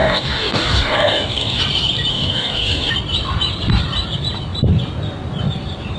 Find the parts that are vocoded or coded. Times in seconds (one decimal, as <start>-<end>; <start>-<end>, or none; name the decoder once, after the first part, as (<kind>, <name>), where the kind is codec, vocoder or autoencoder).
0.0-1.6 (codec, DAC); 2.1-2.9